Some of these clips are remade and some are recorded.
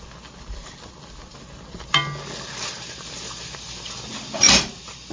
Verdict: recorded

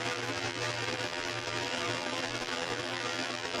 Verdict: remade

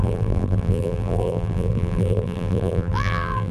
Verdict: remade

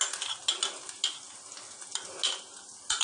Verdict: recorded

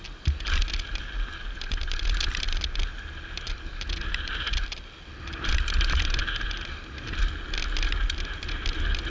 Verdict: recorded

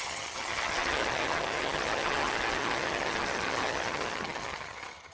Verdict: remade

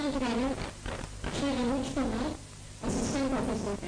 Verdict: recorded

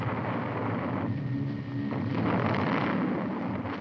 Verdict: recorded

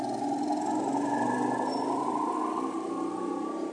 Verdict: recorded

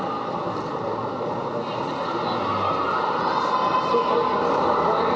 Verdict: recorded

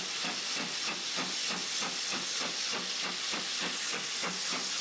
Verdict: recorded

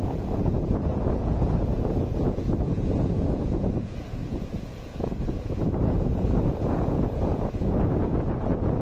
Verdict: remade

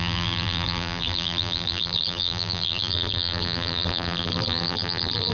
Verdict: remade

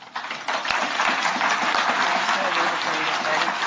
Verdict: recorded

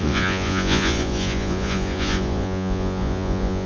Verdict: remade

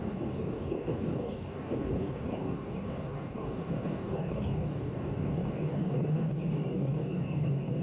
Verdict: remade